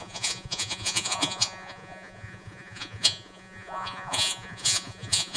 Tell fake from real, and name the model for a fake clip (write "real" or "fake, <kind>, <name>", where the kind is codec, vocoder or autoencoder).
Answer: fake, vocoder, Vocos